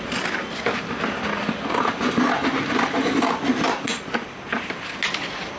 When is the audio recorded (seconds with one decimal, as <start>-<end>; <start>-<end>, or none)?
0.0-5.6